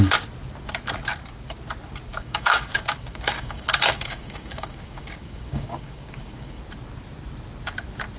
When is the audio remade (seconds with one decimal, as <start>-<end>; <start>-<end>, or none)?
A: 2.1-6.6